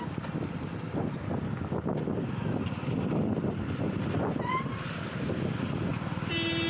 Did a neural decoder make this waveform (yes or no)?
no